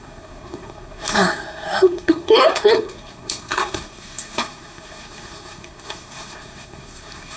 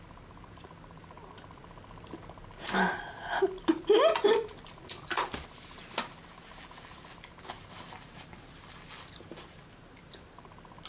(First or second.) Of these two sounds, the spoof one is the first